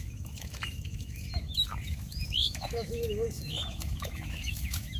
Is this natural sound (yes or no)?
no